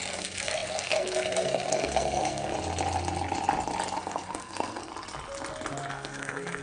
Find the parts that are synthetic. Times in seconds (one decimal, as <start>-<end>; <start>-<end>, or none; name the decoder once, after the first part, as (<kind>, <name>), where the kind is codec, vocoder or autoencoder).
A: 0.0-2.5 (codec, SNAC); 4.0-4.9; 5.9-6.6